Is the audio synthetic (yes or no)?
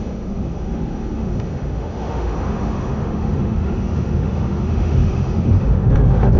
yes